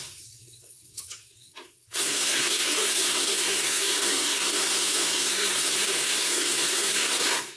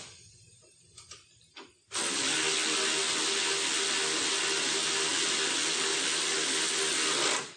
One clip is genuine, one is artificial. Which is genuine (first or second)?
second